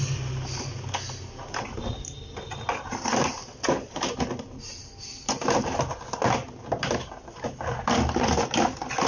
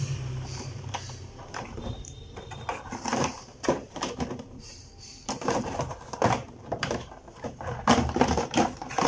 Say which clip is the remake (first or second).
second